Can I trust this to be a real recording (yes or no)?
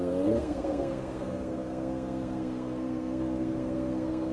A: no